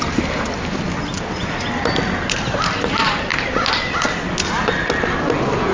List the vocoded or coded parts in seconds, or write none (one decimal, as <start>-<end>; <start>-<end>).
none